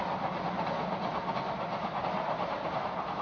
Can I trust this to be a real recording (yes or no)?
yes